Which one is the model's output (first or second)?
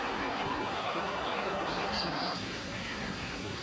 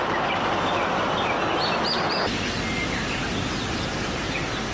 first